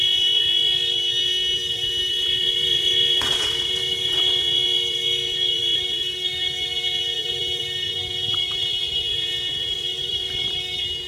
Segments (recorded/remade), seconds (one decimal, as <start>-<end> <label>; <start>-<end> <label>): 0.0-2.2 recorded; 2.2-4.4 remade; 4.4-9.9 recorded; 9.9-10.5 remade; 10.5-11.1 recorded